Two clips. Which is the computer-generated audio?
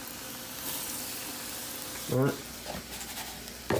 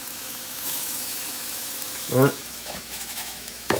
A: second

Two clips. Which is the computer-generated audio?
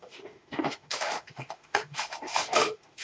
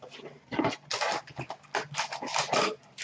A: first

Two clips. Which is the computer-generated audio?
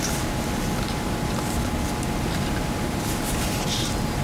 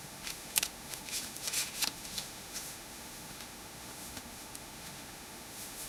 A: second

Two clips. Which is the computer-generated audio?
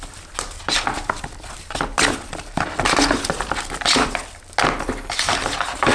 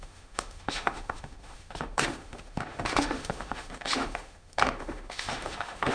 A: second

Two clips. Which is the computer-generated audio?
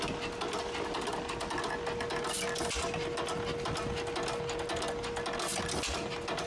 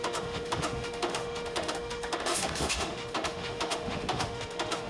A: second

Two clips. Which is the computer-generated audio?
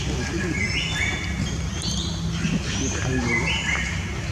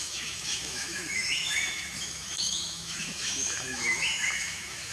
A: second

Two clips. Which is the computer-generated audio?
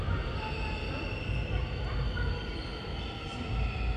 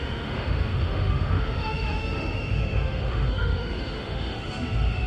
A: second